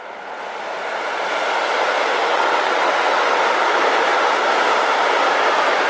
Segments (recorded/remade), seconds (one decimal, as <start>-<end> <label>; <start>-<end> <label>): 0.0-2.3 recorded; 2.3-3.4 remade; 3.4-5.9 recorded